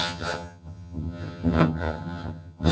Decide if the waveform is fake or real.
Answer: fake